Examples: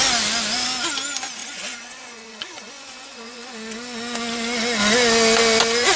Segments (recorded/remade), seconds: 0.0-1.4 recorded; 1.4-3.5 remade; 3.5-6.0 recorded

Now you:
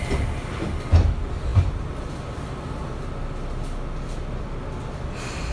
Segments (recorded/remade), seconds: 0.0-5.5 recorded

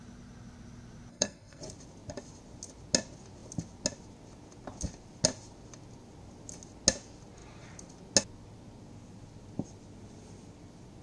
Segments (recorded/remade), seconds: 0.0-1.1 recorded; 1.1-1.6 remade; 1.6-11.0 recorded

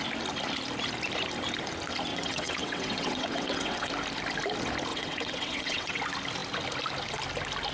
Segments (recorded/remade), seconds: 0.0-2.1 recorded; 2.1-3.9 remade; 3.9-4.9 recorded; 4.9-6.0 remade; 6.0-7.7 recorded

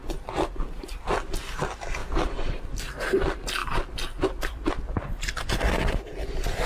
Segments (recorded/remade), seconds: 0.0-2.0 recorded; 2.0-2.6 remade; 2.6-6.7 recorded

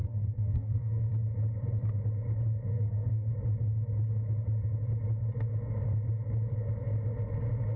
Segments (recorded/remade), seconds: 0.0-1.1 remade; 1.1-2.7 recorded; 2.7-3.3 remade; 3.3-7.8 recorded